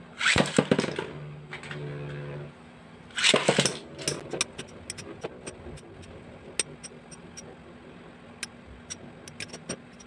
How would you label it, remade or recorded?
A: recorded